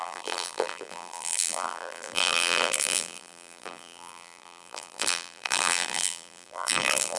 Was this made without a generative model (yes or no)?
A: no